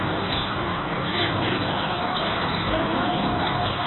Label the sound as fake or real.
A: fake